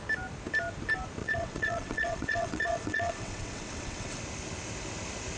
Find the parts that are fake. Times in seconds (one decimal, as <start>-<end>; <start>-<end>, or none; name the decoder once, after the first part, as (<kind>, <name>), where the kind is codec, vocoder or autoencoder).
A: 1.2-4.2 (vocoder, WaveNeXt)

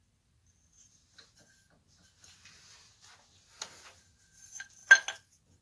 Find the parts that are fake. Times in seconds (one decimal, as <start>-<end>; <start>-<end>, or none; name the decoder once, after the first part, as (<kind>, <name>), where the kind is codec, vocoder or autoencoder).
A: none

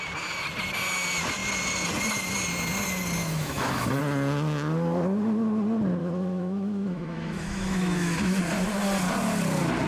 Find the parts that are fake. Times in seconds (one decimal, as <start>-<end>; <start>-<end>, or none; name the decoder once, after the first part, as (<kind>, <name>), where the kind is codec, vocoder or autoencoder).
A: 3.2-4.0 (autoencoder, DAC-VAE); 6.0-8.4

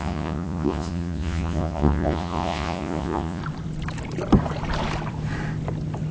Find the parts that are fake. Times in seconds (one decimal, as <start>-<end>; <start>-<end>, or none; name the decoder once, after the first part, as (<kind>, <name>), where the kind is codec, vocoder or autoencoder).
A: 0.0-3.4 (vocoder, Vocos)

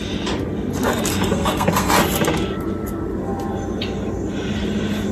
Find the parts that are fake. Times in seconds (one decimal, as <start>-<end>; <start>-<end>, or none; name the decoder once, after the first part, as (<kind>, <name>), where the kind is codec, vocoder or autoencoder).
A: 1.1-1.9 (codec, SNAC)